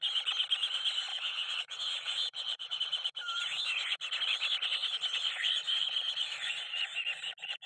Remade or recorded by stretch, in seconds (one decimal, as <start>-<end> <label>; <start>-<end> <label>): 0.0-1.1 recorded; 1.1-2.8 remade; 2.8-7.7 recorded